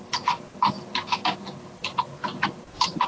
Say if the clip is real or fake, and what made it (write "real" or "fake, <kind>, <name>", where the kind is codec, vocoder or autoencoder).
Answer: real